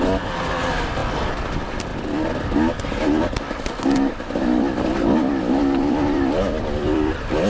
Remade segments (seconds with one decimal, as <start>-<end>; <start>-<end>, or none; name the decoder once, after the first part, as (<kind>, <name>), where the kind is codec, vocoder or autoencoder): 0.0-1.0 (vocoder, BigVGAN v2); 1.5-7.5